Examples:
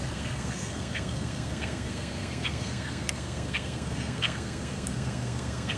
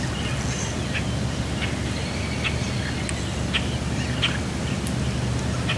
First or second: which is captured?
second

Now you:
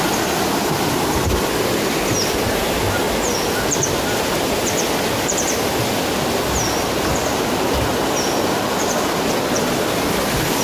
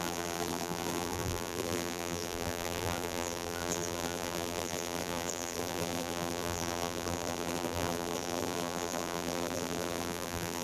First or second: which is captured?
first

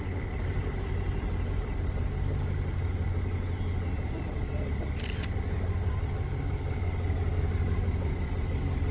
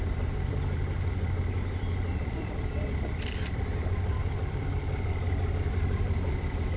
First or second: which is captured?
first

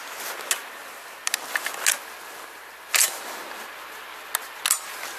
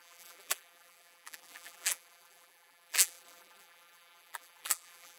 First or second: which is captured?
first